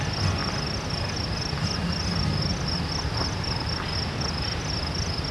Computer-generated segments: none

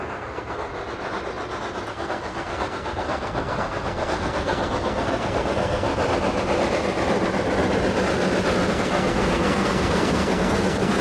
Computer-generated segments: 0.0-0.7; 1.9-5.9; 8.7-11.0

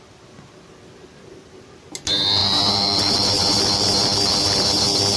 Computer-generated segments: 2.4-4.3

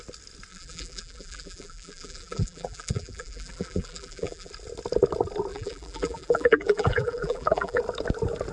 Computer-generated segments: 0.5-4.5; 5.5-7.8